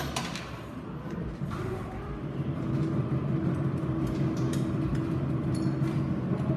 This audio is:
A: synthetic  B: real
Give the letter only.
B